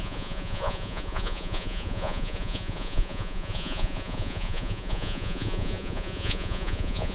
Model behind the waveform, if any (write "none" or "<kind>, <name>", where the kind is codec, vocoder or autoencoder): vocoder, Vocos